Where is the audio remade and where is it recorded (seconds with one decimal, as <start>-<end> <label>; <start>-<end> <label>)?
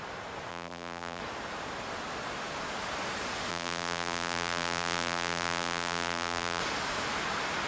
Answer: 0.0-0.5 recorded; 0.5-1.2 remade; 1.2-3.5 recorded; 3.5-6.6 remade; 6.6-7.7 recorded